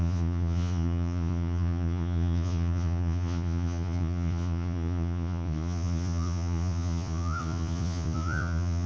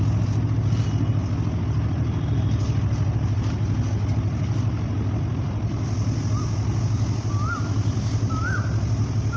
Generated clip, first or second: first